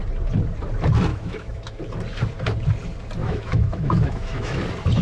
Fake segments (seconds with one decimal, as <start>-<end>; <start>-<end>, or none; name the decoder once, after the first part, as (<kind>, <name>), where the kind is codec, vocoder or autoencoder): 1.1-1.8 (autoencoder, DAC-VAE); 3.2-4.6